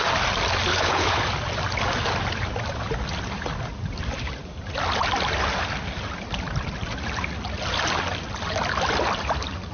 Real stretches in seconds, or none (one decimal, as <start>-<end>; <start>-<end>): 0.0-0.7; 1.2-9.7

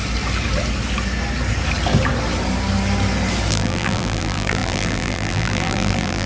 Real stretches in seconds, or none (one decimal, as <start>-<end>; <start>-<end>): 0.0-3.5

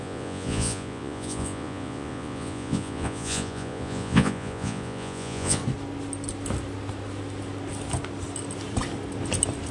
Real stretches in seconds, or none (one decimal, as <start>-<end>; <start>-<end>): 5.6-9.7

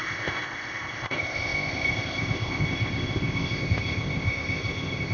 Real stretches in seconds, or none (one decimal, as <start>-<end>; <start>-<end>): none

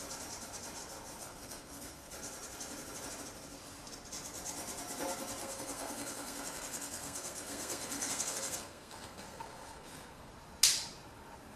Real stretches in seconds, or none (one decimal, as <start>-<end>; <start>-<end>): 0.0-1.2; 2.1-5.4; 10.3-11.6

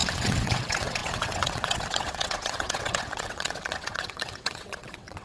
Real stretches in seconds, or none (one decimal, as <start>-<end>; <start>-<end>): none

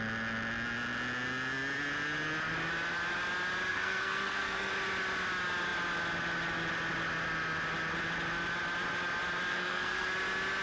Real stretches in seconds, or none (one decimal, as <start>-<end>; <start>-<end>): 0.0-3.7; 4.7-9.5; 10.1-10.6